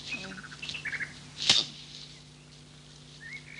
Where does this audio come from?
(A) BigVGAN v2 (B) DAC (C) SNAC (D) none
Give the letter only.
D